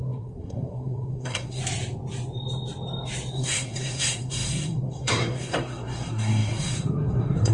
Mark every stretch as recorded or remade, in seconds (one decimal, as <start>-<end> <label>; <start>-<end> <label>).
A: 0.0-1.6 remade; 1.6-3.3 recorded; 3.3-7.5 remade